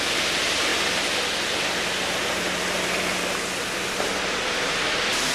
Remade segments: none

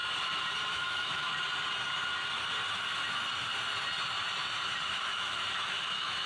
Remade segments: 0.7-1.3 (autoencoder, DAC-VAE); 5.0-6.3

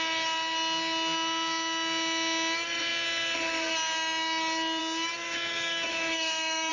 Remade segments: 5.2-6.7 (autoencoder, DAC-VAE)

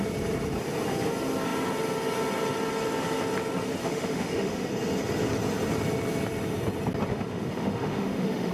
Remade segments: 3.8-4.7 (autoencoder, DAC-VAE); 7.1-8.5